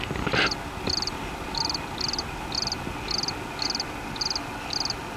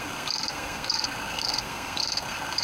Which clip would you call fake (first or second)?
second